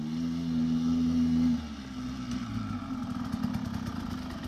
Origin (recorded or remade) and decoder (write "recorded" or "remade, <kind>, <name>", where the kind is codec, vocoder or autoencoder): recorded